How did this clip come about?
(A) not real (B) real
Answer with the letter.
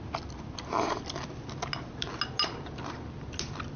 B